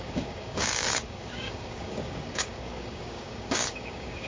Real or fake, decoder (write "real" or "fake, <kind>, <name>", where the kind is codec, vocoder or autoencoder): fake, codec, DAC